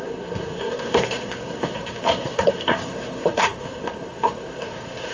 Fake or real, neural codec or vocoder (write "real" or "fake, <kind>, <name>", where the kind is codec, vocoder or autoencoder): fake, codec, SNAC